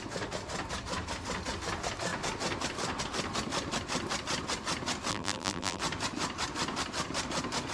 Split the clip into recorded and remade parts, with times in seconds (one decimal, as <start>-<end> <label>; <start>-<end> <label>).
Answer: 0.0-5.1 recorded; 5.1-5.8 remade; 5.8-7.7 recorded